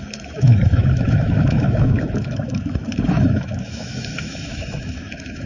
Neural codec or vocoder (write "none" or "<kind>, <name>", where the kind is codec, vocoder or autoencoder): autoencoder, DAC-VAE